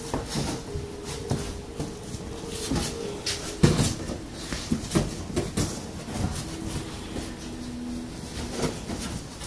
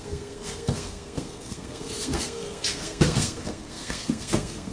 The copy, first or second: second